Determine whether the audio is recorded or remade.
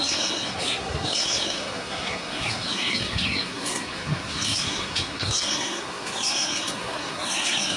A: remade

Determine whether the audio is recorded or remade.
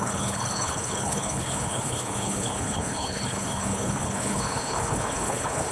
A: remade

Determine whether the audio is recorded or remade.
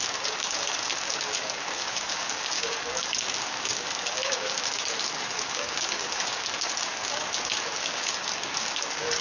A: remade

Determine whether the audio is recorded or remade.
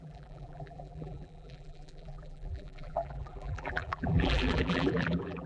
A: remade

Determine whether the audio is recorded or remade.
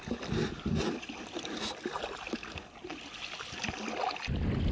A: recorded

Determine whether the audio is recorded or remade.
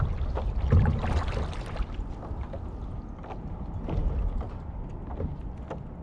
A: recorded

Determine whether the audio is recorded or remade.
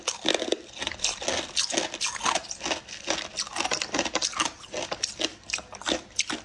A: recorded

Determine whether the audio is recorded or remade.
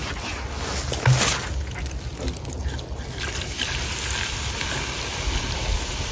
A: recorded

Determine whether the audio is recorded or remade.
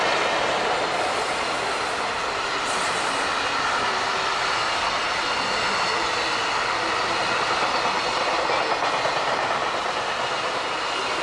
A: recorded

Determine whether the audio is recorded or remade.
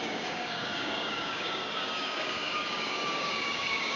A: remade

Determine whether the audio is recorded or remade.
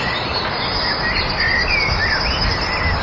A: recorded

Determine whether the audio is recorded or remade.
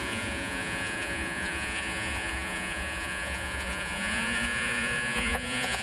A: remade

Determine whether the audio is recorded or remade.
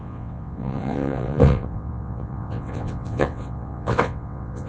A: remade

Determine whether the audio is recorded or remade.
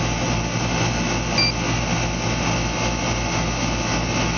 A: recorded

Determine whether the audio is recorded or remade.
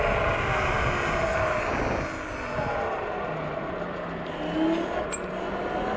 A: recorded